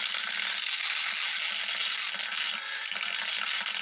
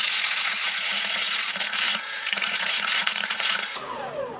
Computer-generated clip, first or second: second